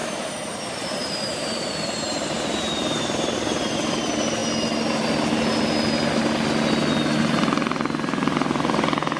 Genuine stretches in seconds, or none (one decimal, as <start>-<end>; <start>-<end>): 4.0-9.2